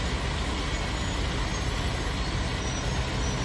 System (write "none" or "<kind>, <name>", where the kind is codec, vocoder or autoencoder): none